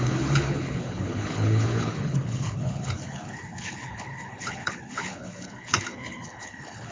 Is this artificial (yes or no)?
yes